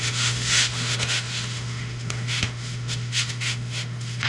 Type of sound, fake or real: fake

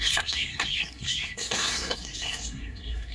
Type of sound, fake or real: fake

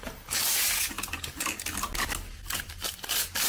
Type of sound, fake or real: real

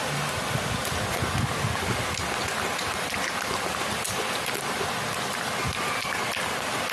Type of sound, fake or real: real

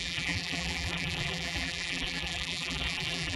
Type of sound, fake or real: fake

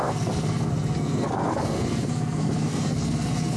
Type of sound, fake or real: fake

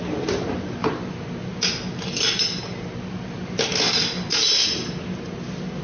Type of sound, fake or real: real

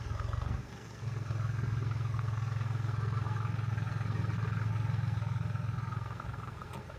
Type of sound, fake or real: fake